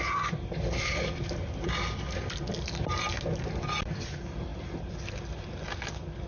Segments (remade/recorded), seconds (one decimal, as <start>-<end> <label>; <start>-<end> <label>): 0.0-6.3 recorded